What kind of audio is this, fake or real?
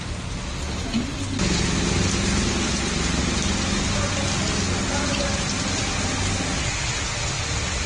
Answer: real